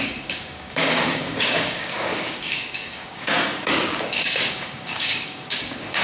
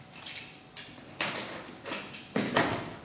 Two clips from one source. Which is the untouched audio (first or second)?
second